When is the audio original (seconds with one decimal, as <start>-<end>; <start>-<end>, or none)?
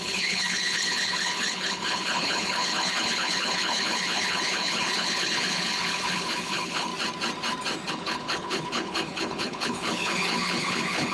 6.9-7.9